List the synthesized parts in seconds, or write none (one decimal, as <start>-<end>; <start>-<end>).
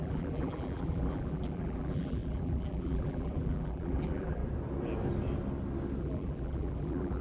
0.0-4.4; 6.0-7.2